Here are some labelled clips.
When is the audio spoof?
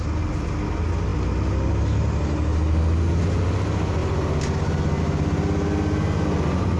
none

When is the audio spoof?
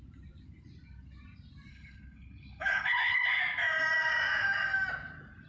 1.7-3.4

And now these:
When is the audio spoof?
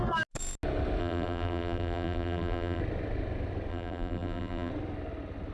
1.0-2.8; 3.7-4.7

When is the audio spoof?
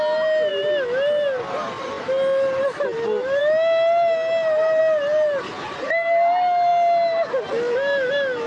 none